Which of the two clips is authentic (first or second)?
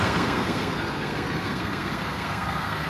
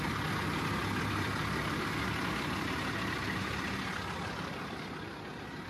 second